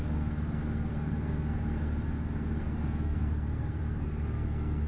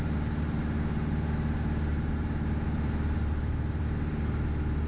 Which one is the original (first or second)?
second